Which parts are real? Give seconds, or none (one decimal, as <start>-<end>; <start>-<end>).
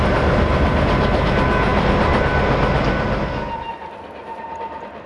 0.0-5.1